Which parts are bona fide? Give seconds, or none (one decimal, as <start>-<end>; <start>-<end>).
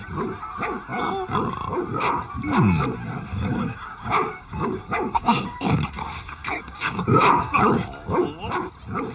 0.0-3.3; 7.6-9.1